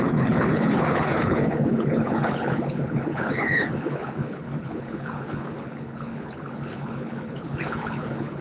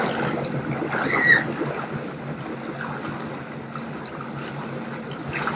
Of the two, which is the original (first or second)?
second